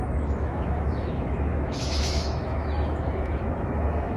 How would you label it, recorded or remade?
remade